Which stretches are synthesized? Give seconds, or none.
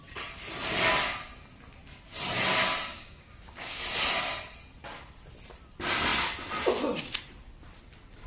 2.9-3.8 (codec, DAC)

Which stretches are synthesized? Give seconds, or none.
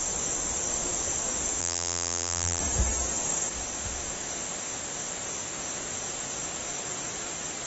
1.6-2.6 (vocoder, BigVGAN v2)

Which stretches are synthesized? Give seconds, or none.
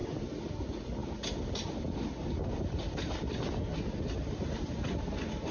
none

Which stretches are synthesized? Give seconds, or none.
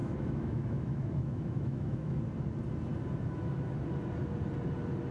0.0-2.2 (autoencoder, DAC-VAE)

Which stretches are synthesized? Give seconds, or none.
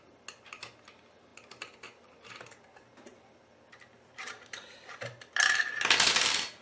none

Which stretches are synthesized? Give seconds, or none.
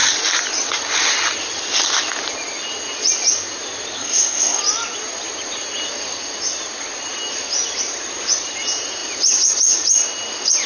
4.0-4.6 (codec, SNAC)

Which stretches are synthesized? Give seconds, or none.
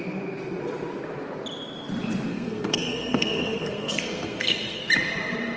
2.3-4.8 (codec, SNAC)